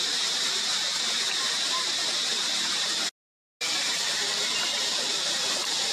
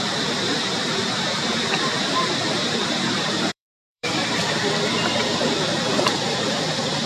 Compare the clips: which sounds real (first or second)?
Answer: first